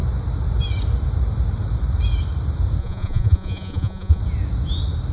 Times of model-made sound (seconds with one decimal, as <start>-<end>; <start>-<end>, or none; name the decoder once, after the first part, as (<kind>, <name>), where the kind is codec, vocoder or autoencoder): 2.8-4.2 (vocoder, Vocos)